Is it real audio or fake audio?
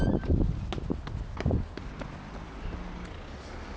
real